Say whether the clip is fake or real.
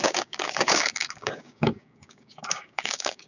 fake